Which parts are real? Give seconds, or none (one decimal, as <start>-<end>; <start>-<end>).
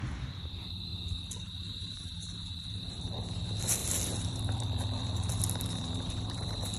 0.9-2.6